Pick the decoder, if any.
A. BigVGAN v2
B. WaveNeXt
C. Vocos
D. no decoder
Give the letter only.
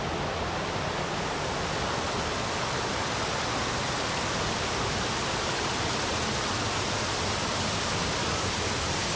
D